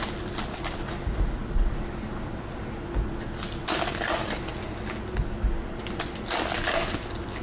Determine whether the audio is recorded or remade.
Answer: recorded